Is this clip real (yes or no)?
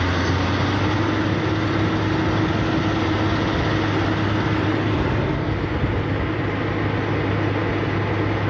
yes